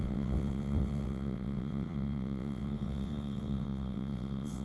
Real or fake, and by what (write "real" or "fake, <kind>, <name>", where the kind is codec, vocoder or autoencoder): fake, vocoder, WaveNeXt